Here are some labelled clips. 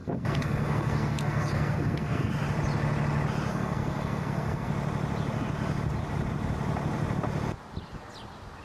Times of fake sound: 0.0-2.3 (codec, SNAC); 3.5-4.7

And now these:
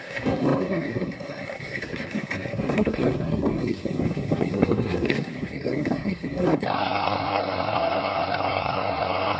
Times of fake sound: 0.0-9.4 (codec, SNAC)

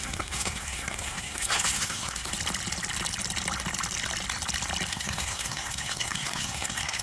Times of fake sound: 0.0-2.3 (codec, SNAC); 4.9-7.0

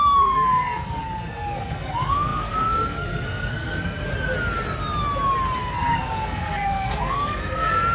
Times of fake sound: 0.0-4.1 (codec, SNAC); 5.6-7.9

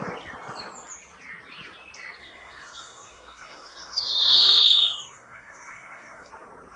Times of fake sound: 2.2-6.3 (codec, SNAC)

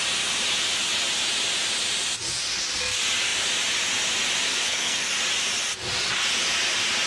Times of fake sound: 4.5-5.1 (codec, SNAC)